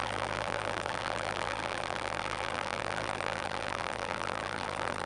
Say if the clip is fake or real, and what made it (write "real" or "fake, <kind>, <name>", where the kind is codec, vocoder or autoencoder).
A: fake, vocoder, BigVGAN v2